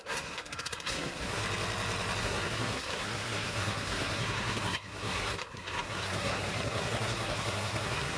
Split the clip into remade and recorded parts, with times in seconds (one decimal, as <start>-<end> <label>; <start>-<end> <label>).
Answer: 0.0-1.4 remade; 1.4-2.2 recorded; 2.2-8.2 remade